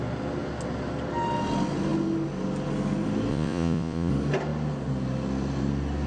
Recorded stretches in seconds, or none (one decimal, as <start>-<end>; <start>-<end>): 0.0-3.3; 4.1-6.1